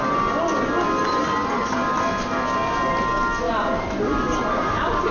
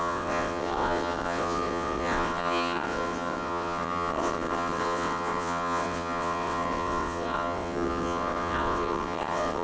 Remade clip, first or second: second